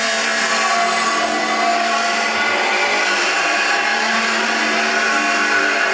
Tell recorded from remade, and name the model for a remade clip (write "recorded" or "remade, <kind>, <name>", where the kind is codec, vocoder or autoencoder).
recorded